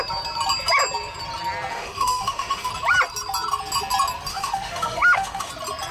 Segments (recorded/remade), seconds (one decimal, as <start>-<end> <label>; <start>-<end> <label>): 0.0-1.7 recorded; 1.7-2.7 remade; 2.7-4.3 recorded; 4.3-5.5 remade; 5.5-5.9 recorded